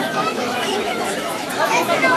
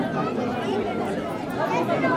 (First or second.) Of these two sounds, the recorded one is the second